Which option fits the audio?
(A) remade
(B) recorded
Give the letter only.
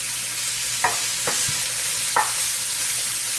B